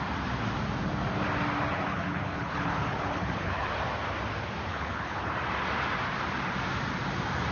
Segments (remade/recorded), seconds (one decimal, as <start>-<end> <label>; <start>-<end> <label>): 0.0-1.7 recorded; 1.7-3.7 remade; 3.7-4.7 recorded; 4.7-5.3 remade; 5.3-7.5 recorded